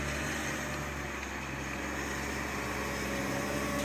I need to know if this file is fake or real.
real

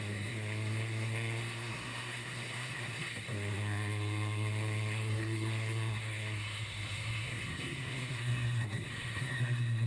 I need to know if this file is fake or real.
fake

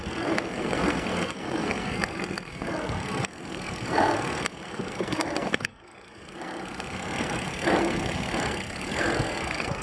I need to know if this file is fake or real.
fake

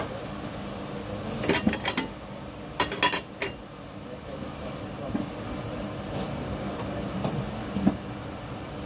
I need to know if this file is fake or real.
real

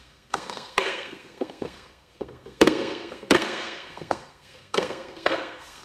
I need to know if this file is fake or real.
fake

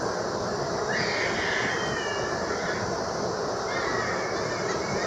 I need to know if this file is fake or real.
real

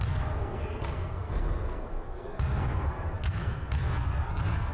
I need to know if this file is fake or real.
fake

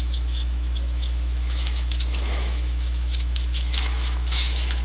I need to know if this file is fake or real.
fake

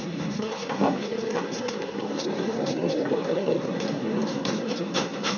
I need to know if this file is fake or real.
fake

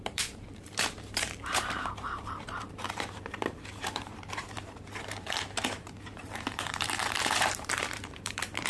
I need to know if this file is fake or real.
fake